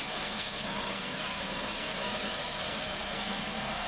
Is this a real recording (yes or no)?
no